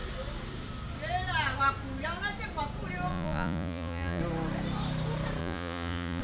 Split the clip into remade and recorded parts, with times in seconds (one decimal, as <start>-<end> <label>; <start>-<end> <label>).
0.0-3.1 recorded; 3.1-4.2 remade; 4.2-5.4 recorded; 5.4-6.2 remade